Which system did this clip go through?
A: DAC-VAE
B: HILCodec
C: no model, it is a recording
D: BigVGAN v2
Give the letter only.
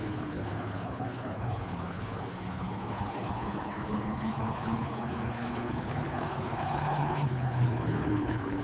B